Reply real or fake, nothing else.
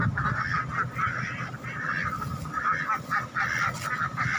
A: real